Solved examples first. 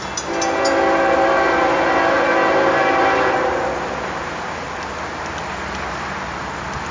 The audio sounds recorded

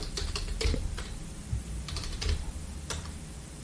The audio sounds remade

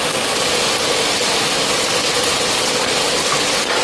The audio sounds recorded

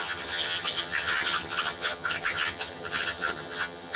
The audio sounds remade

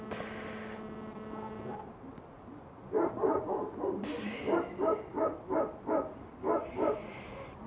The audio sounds recorded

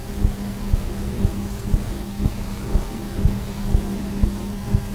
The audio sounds remade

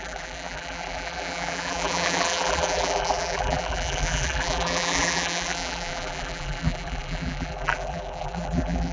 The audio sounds remade